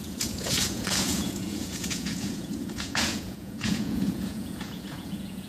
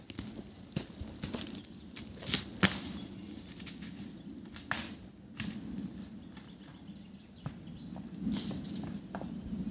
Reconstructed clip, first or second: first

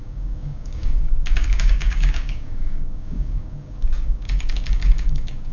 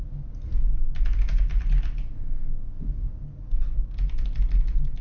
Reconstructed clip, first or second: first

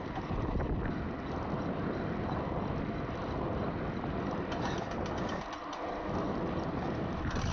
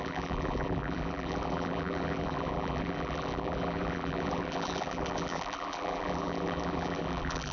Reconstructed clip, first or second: second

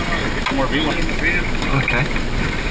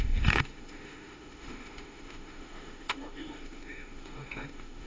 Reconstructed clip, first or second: second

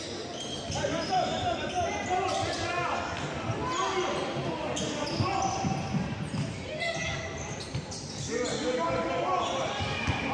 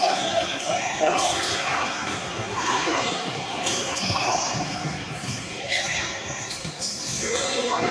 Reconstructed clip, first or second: second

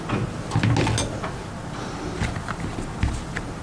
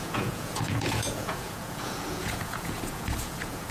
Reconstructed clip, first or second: second